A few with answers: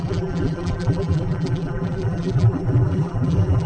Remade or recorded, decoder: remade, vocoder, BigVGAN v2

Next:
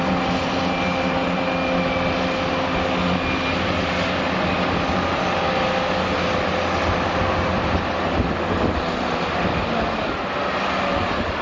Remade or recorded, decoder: recorded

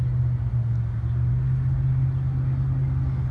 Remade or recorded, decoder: recorded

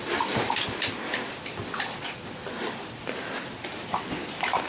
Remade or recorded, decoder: remade, vocoder, BigVGAN v2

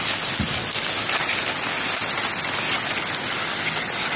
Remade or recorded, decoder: recorded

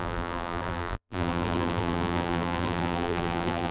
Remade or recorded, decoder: remade, vocoder, BigVGAN v2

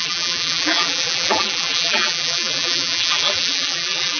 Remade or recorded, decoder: remade, vocoder, BigVGAN v2